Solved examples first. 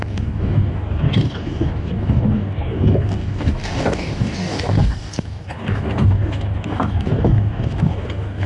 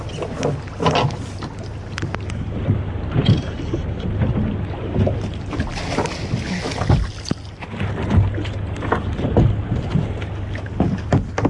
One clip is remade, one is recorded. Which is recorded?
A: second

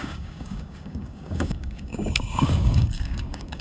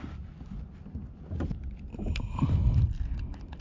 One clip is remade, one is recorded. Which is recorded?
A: second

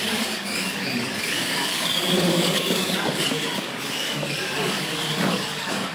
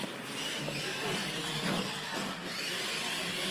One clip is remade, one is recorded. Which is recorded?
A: second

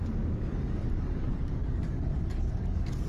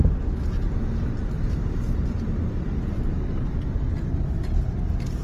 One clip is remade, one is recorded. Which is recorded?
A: second